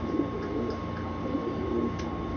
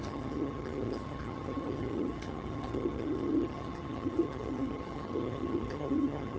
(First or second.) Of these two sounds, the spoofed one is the second